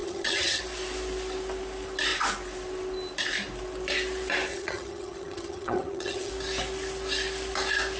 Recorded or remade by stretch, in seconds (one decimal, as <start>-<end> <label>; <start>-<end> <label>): 0.0-0.6 remade; 0.6-4.5 recorded; 4.5-6.3 remade; 6.3-8.0 recorded